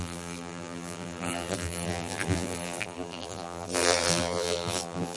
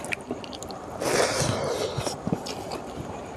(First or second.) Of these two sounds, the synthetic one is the first